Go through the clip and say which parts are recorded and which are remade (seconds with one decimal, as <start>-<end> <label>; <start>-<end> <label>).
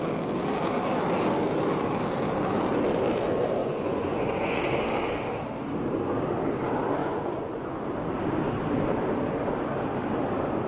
0.0-3.6 recorded; 3.6-4.8 remade; 4.8-7.0 recorded; 7.0-7.9 remade; 7.9-10.7 recorded